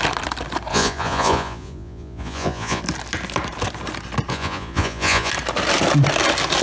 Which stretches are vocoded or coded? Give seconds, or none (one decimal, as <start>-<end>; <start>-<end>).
0.7-2.8; 4.3-5.3